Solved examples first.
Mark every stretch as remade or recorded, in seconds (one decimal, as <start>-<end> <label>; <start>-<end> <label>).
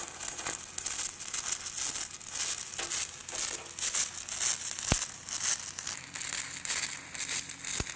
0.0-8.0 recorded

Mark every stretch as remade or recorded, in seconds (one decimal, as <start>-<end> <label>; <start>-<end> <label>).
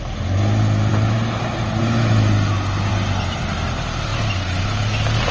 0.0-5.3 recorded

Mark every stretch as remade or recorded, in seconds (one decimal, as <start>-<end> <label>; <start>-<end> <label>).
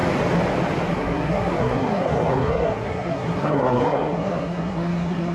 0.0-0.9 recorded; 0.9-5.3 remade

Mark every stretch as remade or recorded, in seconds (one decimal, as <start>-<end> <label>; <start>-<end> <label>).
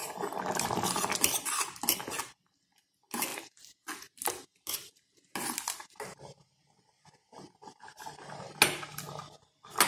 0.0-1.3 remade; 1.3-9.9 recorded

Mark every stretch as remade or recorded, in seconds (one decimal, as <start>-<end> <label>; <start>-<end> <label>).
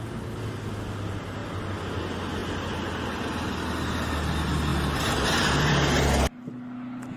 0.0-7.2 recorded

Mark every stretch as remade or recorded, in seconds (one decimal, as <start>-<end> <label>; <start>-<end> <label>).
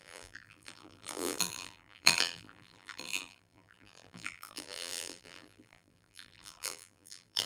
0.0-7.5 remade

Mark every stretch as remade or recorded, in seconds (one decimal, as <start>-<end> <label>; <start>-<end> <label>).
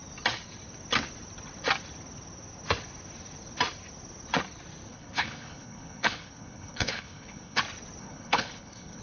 0.0-4.9 recorded; 4.9-7.6 remade; 7.6-8.0 recorded; 8.0-9.0 remade